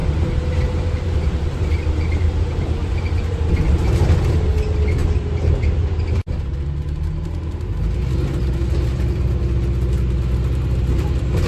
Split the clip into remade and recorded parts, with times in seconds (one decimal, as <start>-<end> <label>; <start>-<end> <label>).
0.0-2.2 remade; 2.2-2.8 recorded; 2.8-3.5 remade; 3.5-11.5 recorded